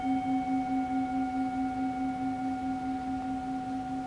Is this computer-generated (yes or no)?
no